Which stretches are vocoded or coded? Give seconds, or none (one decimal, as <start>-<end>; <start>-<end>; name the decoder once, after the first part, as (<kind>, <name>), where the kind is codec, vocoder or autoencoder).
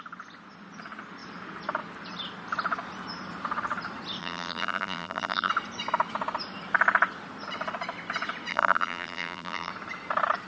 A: 4.2-5.5 (vocoder, BigVGAN v2); 8.5-9.7